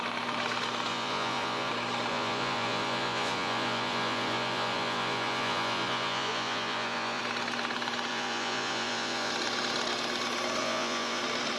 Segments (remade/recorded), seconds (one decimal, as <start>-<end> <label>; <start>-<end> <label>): 0.0-0.9 recorded; 0.9-1.7 remade; 1.7-2.1 recorded; 2.1-7.2 remade; 7.2-8.1 recorded; 8.1-9.3 remade; 9.3-10.6 recorded; 10.6-11.2 remade; 11.2-11.6 recorded